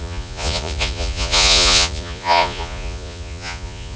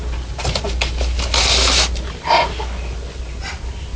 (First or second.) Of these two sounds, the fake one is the first